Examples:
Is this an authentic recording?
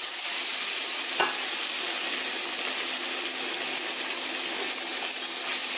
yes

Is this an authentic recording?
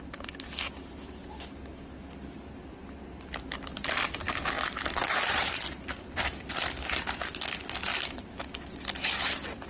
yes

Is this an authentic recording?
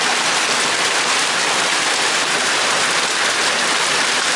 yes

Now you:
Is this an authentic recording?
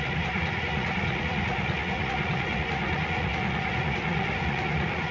no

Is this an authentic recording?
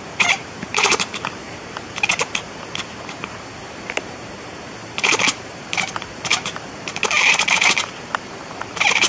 no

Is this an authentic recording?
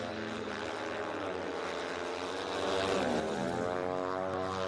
yes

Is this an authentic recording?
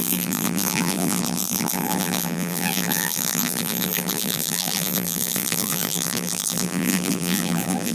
no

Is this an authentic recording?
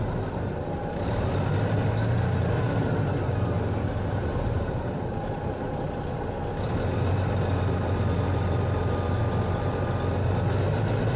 yes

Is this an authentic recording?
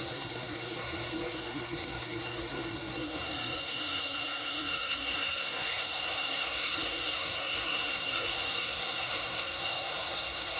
no